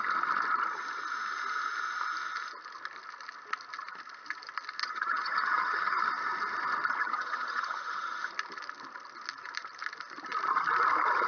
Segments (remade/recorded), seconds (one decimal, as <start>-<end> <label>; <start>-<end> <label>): 0.0-4.8 recorded; 4.8-6.0 remade; 6.0-7.0 recorded; 7.0-8.2 remade; 8.2-11.3 recorded

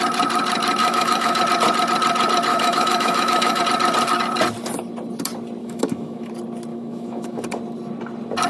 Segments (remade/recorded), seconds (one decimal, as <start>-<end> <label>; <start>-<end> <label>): 0.0-0.8 recorded; 0.8-1.4 remade; 1.4-2.5 recorded; 2.5-3.6 remade; 3.6-5.6 recorded; 5.6-6.3 remade; 6.3-6.7 recorded; 6.7-7.4 remade; 7.4-8.5 recorded

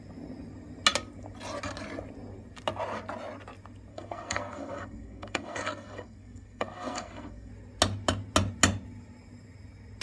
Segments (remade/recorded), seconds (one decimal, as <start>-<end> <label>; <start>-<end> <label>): 0.0-3.9 recorded; 3.9-7.5 remade; 7.5-10.0 recorded

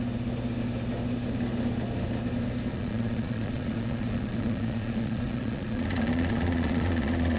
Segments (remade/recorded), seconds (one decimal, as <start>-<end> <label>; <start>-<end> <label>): 0.0-2.7 recorded; 2.7-7.4 remade

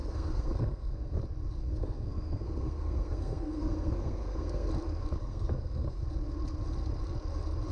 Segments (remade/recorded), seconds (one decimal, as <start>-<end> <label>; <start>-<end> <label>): 0.0-1.2 remade; 1.2-1.6 recorded; 1.6-4.7 remade; 4.7-5.2 recorded; 5.2-6.0 remade; 6.0-7.7 recorded